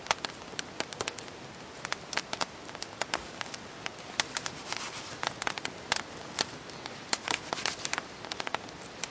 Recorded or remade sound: recorded